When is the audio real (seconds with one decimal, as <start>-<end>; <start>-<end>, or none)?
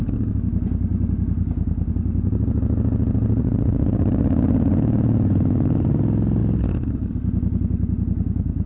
0.0-3.4; 6.0-8.7